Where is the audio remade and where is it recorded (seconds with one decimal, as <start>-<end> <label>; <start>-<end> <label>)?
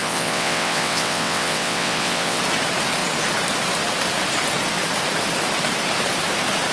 0.0-2.4 remade; 2.4-6.7 recorded